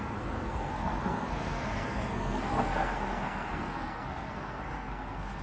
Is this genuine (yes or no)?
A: no